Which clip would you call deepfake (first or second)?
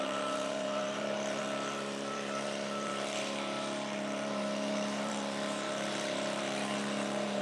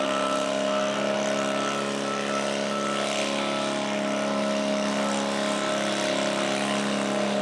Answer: first